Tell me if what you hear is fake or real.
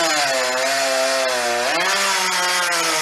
real